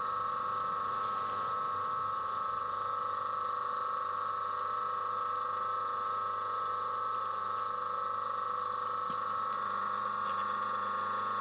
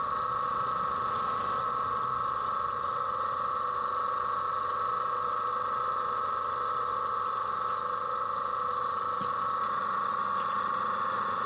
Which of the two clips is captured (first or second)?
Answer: first